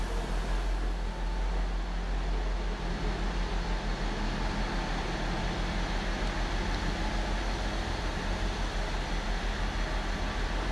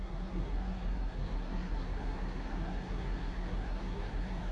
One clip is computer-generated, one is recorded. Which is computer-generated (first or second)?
second